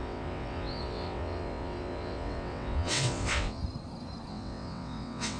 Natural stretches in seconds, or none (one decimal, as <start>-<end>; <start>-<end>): 3.6-4.3